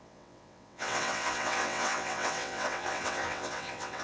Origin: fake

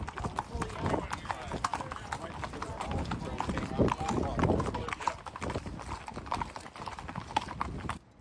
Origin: real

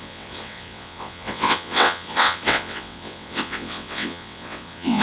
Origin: fake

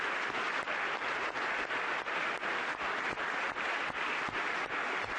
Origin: real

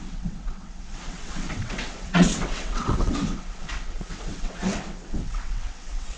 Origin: fake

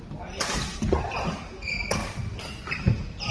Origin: real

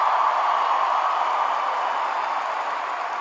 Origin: real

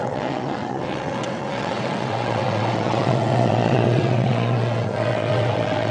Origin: fake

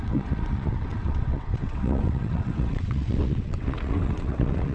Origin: fake